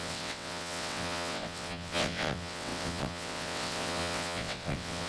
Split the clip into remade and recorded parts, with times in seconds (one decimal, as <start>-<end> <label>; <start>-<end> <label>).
0.0-5.1 remade